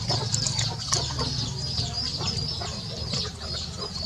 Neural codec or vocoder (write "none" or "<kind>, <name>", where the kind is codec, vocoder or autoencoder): vocoder, BigVGAN v2